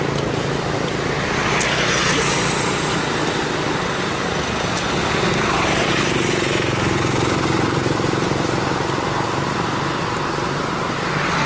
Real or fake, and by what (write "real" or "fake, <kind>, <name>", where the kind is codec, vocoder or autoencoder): real